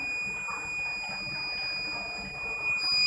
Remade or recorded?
recorded